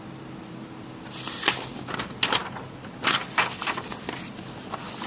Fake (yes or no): no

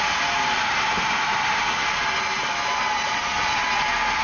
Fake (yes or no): no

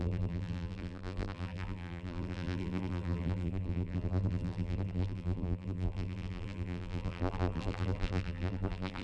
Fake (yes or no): yes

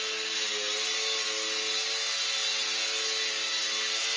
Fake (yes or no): no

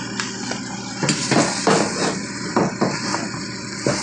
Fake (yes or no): no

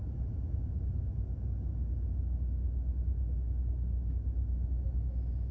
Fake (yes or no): no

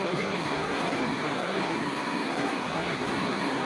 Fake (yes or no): yes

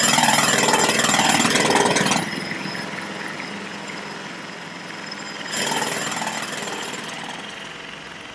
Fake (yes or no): no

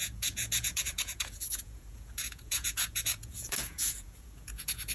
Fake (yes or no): yes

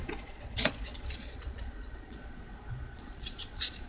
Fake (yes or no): yes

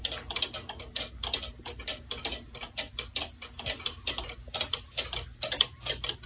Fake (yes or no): no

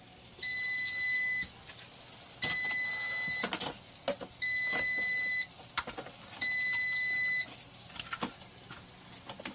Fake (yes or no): no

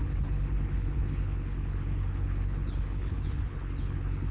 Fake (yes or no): yes